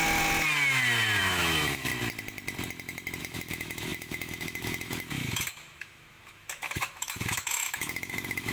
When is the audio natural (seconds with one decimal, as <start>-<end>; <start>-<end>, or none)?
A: 0.0-1.2; 1.9-3.2